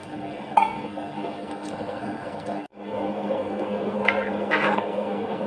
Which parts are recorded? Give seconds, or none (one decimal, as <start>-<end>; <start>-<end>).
none